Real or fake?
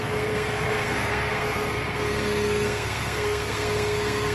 fake